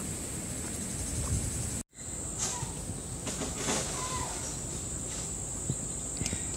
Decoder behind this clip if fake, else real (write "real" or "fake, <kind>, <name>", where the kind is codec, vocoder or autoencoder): real